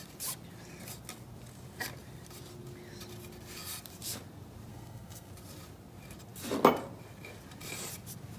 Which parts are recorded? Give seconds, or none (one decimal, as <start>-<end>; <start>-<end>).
0.0-4.7; 5.3-8.4